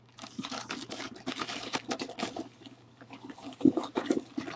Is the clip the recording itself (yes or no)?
no